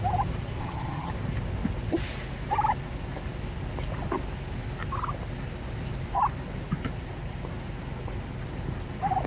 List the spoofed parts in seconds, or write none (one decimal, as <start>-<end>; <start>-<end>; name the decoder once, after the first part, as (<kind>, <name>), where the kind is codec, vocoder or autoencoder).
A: 0.6-1.1 (vocoder, HiFi-GAN)